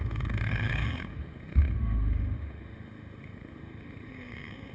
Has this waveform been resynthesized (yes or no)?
yes